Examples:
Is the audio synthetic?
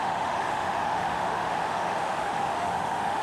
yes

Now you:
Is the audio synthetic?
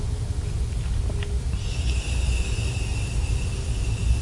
no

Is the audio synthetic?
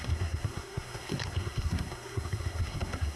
yes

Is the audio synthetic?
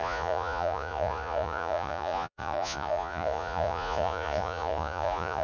yes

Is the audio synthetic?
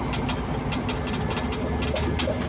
no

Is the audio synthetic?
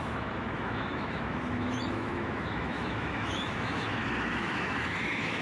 yes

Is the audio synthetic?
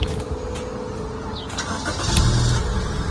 no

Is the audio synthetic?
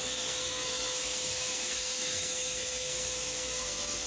yes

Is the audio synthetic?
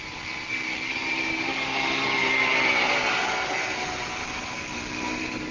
no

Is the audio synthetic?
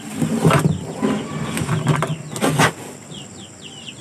no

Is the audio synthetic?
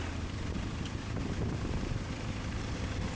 yes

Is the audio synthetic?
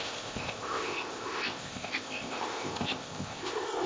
yes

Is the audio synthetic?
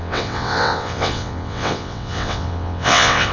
yes